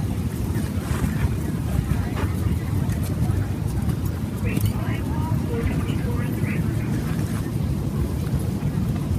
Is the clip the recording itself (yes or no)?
yes